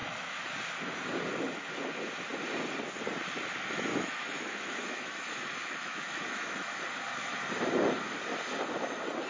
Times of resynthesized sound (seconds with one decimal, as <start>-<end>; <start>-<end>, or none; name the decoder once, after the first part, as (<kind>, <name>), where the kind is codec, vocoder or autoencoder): 0.0-0.5 (autoencoder, DAC-VAE); 3.9-6.7